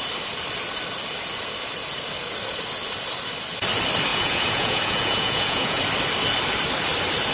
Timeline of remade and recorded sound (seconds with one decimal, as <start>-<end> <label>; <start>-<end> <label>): 0.0-4.1 recorded; 4.1-5.8 remade; 5.8-7.3 recorded